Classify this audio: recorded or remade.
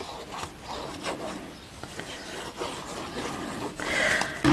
recorded